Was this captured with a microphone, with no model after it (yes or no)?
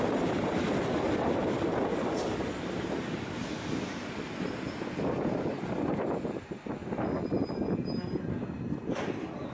yes